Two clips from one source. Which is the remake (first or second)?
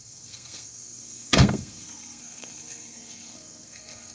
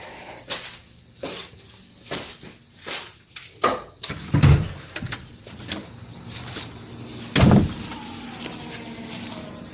first